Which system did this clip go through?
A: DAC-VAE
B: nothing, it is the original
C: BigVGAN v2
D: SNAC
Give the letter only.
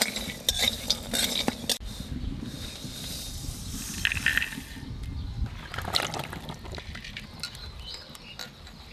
B